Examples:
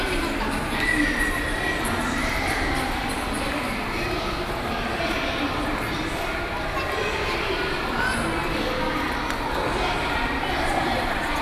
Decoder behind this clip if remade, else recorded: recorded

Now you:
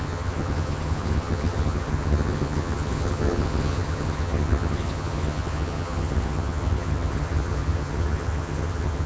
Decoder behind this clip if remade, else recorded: remade, vocoder, HiFi-GAN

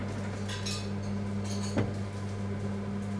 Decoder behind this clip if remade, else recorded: recorded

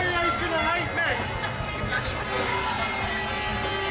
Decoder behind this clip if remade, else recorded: recorded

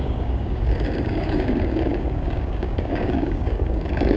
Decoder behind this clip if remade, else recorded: remade, codec, DAC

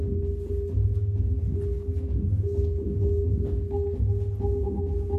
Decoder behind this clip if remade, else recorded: recorded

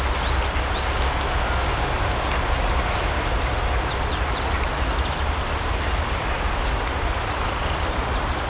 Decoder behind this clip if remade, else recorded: recorded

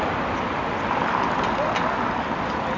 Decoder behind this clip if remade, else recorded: recorded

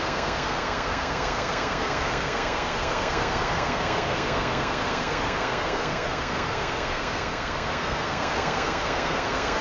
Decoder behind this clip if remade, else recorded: remade, codec, SNAC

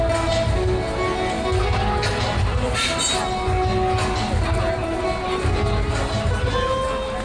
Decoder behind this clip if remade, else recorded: recorded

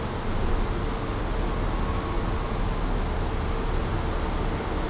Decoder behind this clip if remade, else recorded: recorded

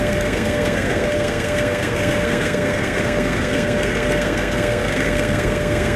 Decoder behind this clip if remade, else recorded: remade, codec, SNAC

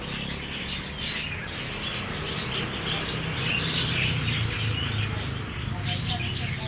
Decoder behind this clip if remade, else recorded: recorded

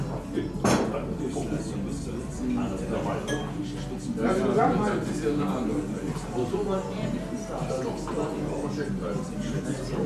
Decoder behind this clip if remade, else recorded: recorded